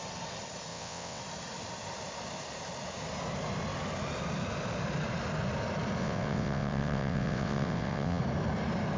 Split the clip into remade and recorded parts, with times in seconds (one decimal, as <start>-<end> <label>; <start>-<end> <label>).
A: 0.0-0.7 recorded; 0.7-1.2 remade; 1.2-6.0 recorded; 6.0-8.2 remade; 8.2-9.0 recorded

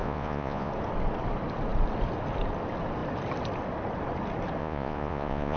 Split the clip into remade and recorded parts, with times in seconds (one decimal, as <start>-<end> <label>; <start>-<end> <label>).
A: 0.0-0.7 remade; 0.7-4.6 recorded; 4.6-5.6 remade

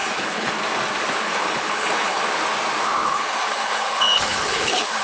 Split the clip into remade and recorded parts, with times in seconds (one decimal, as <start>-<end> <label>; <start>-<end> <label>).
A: 0.0-0.5 remade; 0.5-1.3 recorded; 1.3-2.2 remade; 2.2-3.0 recorded; 3.0-5.0 remade

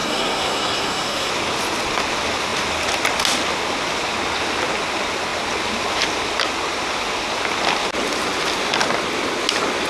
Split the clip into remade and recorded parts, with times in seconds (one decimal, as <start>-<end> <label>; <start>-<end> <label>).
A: 0.0-1.3 remade; 1.3-9.9 recorded

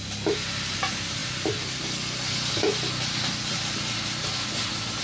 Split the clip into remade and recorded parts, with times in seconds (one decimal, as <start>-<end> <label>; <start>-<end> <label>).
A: 0.0-5.0 recorded